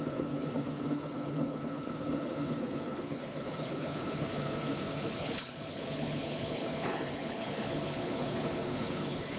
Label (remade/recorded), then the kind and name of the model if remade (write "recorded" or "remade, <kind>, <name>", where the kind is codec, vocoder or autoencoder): remade, codec, HILCodec